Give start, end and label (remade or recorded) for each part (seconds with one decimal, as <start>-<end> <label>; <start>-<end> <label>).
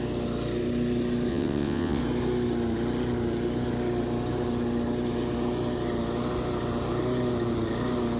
0.0-1.3 recorded; 1.3-2.0 remade; 2.0-8.2 recorded